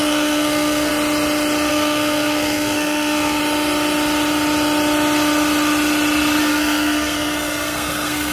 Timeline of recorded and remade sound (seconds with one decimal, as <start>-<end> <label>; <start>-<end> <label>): 0.0-0.9 remade; 0.9-1.7 recorded; 1.7-3.4 remade; 3.4-6.4 recorded; 6.4-8.3 remade